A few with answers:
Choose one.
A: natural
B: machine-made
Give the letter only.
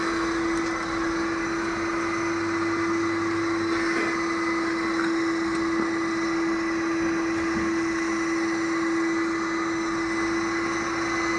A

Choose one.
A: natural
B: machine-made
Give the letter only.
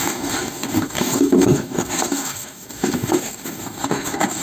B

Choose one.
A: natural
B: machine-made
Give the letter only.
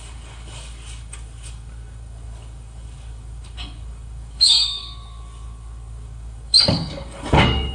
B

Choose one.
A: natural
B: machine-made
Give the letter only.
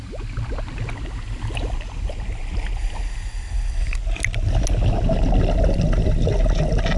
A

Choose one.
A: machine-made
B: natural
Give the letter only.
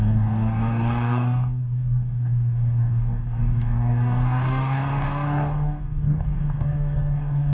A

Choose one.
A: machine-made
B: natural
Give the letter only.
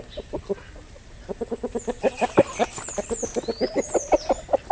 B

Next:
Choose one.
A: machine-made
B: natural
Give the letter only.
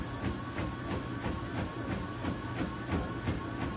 B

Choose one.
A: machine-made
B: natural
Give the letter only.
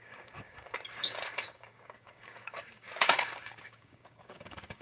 A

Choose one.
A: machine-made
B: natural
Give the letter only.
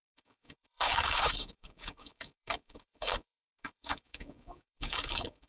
A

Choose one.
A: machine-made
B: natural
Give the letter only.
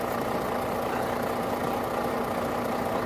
B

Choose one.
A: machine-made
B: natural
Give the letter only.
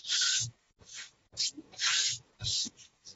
A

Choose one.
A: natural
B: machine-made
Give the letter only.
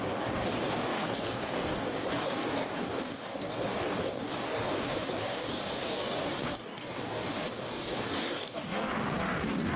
B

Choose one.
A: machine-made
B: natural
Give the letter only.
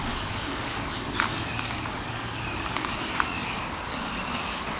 A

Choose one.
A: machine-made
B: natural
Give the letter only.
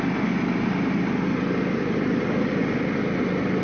B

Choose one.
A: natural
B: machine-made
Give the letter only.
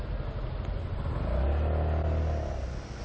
A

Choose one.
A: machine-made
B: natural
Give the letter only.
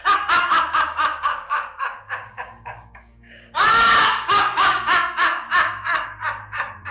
A